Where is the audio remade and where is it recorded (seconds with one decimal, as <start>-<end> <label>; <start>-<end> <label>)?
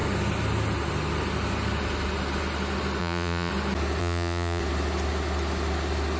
0.0-3.0 recorded; 3.0-3.5 remade; 3.5-4.0 recorded; 4.0-4.6 remade; 4.6-6.2 recorded